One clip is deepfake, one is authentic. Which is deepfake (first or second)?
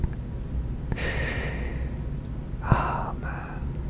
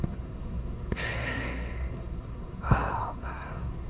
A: second